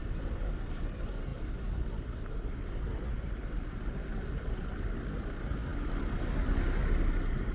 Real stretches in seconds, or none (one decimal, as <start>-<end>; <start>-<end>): 0.0-7.5